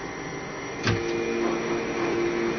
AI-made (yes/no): no